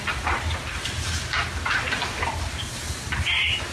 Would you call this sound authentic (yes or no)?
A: yes